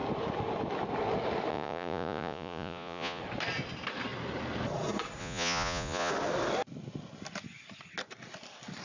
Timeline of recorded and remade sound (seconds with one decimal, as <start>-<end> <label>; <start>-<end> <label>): 0.0-1.5 recorded; 1.5-3.2 remade; 3.2-5.2 recorded; 5.2-6.1 remade; 6.1-8.8 recorded